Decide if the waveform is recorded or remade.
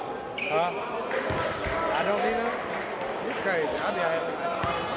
recorded